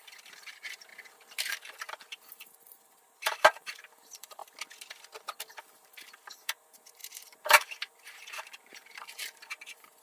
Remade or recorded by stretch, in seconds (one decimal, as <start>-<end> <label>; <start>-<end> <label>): 0.0-0.9 remade; 0.9-1.5 recorded; 1.5-4.4 remade; 4.4-5.6 recorded; 5.6-10.0 remade